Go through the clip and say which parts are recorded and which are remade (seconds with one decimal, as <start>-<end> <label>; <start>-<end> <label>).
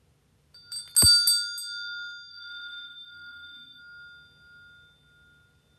0.0-2.3 recorded; 2.3-3.8 remade; 3.8-5.8 recorded